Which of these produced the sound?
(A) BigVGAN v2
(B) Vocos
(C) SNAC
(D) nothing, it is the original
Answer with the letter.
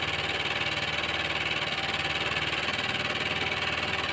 D